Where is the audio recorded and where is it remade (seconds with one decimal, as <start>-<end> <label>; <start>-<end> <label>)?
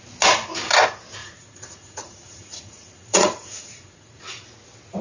0.0-1.2 recorded; 1.2-4.2 remade; 4.2-5.0 recorded